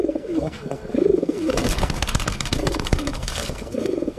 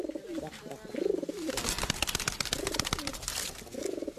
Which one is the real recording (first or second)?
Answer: second